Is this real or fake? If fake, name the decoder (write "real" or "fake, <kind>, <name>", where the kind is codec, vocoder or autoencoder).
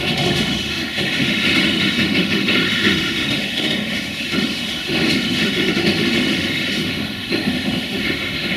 fake, autoencoder, DAC-VAE